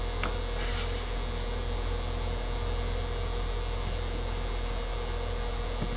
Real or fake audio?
real